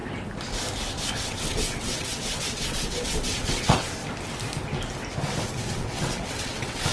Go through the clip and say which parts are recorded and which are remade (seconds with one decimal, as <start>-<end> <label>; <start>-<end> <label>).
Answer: 0.0-1.1 recorded; 1.1-4.0 remade; 4.0-5.7 recorded; 5.7-6.9 remade